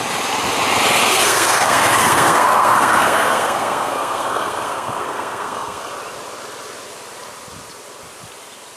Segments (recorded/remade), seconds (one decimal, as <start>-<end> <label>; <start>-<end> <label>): 0.0-1.0 recorded; 1.0-5.9 remade; 5.9-8.8 recorded